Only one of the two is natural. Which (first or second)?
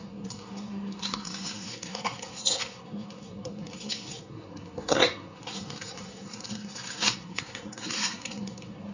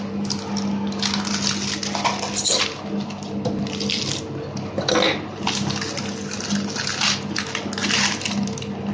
second